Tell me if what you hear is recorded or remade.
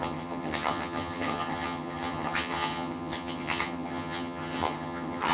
remade